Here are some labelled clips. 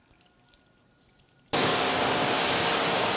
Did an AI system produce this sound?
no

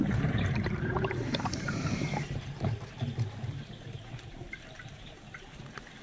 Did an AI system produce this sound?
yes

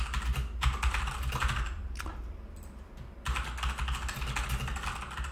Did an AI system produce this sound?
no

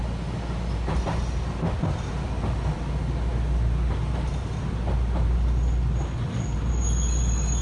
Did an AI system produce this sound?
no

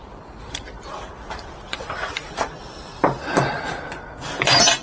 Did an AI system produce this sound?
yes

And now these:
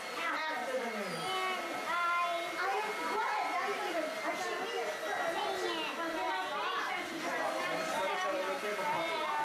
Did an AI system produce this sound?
no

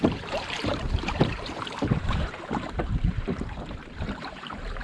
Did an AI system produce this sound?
yes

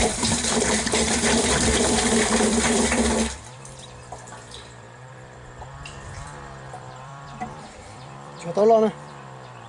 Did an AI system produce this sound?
yes